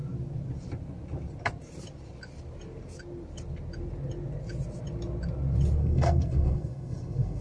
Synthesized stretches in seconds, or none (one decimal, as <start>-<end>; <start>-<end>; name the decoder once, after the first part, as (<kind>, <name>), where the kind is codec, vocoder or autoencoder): 5.8-7.4 (codec, SNAC)